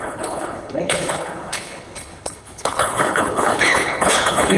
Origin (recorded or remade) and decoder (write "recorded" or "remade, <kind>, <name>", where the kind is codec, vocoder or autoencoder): remade, codec, HILCodec